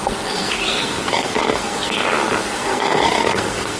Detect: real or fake fake